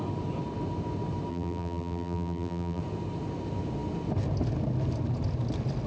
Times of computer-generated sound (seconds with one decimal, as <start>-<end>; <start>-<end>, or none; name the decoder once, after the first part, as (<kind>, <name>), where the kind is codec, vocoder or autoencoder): 1.3-2.8 (vocoder, BigVGAN v2)